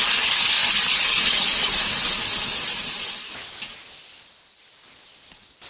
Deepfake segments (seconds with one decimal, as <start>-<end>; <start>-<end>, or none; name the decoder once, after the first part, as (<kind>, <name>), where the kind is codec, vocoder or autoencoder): none

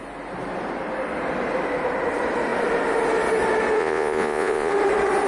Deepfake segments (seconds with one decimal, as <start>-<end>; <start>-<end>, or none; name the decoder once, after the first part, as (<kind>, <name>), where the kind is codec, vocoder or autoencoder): 3.8-4.7 (vocoder, Vocos)